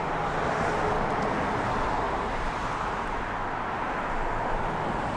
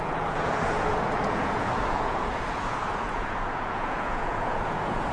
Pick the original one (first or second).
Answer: first